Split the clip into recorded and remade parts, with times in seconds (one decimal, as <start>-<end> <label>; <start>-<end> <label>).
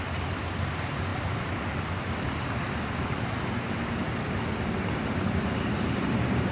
0.0-6.5 recorded